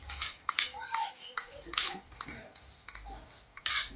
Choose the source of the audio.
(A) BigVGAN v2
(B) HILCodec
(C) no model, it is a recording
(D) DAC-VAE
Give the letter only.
A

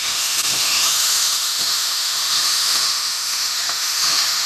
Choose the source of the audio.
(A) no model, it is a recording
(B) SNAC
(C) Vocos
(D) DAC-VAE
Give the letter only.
D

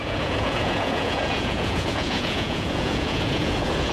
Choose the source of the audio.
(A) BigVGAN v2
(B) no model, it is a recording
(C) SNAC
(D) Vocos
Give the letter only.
D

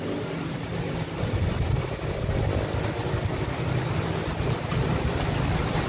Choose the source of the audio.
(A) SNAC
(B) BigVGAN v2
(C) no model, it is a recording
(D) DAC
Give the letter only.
C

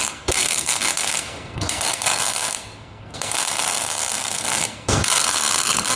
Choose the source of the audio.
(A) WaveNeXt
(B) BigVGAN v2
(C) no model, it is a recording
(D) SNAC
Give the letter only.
D